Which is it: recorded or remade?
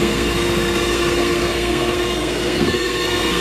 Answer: remade